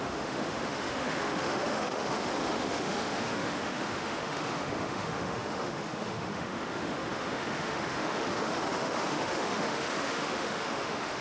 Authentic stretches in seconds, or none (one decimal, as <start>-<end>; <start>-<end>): none